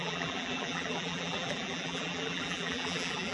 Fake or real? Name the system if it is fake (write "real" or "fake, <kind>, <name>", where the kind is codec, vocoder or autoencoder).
fake, vocoder, BigVGAN v2